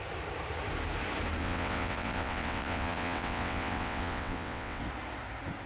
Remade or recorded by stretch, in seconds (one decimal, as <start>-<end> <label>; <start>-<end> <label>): 0.0-1.4 recorded; 1.4-4.8 remade; 4.8-5.7 recorded